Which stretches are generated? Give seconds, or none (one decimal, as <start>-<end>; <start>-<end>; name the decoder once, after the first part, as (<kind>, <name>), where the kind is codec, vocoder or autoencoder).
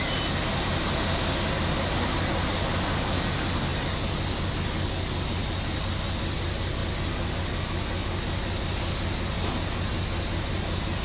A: none